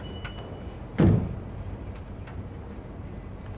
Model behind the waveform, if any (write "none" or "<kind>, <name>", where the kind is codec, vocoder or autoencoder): none